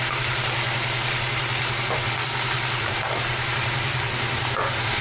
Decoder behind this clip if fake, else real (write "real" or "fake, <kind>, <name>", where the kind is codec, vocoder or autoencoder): fake, vocoder, BigVGAN v2